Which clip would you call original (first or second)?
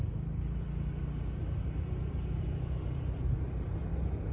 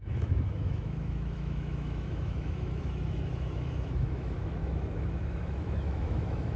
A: first